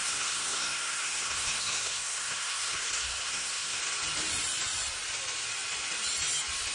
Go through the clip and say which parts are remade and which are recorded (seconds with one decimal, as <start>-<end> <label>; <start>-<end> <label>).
0.0-3.8 remade; 3.8-6.7 recorded

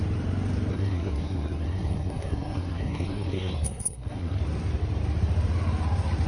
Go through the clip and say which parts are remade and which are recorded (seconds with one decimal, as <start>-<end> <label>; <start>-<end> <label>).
0.0-0.7 recorded; 0.7-4.4 remade; 4.4-6.3 recorded

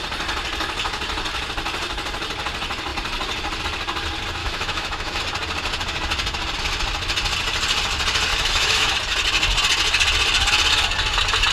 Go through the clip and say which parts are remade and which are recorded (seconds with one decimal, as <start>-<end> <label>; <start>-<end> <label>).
0.0-4.4 recorded; 4.4-5.2 remade; 5.2-8.3 recorded; 8.3-8.9 remade; 8.9-11.5 recorded

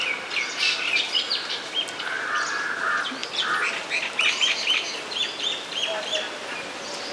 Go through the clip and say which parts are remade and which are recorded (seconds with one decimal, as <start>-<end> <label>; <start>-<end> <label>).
0.0-7.1 recorded

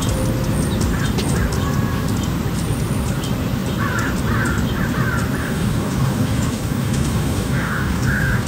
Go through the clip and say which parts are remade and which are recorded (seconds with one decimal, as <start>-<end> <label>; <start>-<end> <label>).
0.0-5.4 recorded; 5.4-8.5 remade